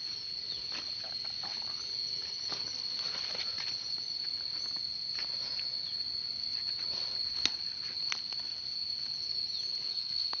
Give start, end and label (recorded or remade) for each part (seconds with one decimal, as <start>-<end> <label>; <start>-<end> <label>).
0.0-9.9 recorded; 9.9-10.4 remade

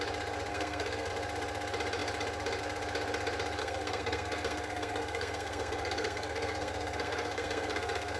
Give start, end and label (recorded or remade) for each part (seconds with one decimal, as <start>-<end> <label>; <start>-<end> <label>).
0.0-0.5 recorded; 0.5-1.1 remade; 1.1-3.6 recorded; 3.6-8.2 remade

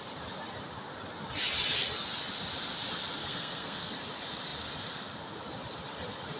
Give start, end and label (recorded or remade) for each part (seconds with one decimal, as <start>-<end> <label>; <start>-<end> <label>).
0.0-3.2 recorded; 3.2-3.9 remade; 3.9-6.4 recorded

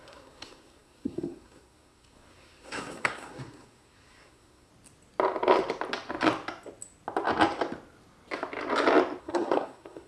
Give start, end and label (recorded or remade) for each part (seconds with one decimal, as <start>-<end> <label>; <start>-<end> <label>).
0.0-4.7 remade; 4.7-9.2 recorded; 9.2-10.1 remade

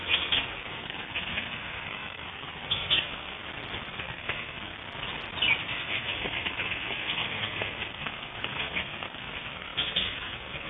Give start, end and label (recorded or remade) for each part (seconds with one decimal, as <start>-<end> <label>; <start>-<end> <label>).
0.0-3.4 remade; 3.4-3.9 recorded; 3.9-4.7 remade; 4.7-5.6 recorded; 5.6-10.7 remade

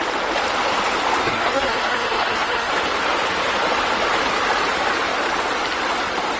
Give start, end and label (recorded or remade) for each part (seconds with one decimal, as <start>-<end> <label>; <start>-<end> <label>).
0.0-1.2 recorded; 1.2-2.7 remade; 2.7-6.4 recorded

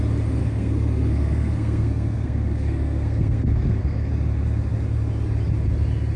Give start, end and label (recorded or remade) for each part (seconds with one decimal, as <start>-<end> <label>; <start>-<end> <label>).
0.0-0.4 recorded; 0.4-4.1 remade; 4.1-6.2 recorded

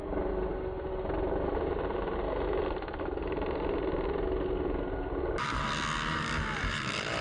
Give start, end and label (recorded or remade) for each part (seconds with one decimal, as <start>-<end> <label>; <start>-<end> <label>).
0.0-7.2 recorded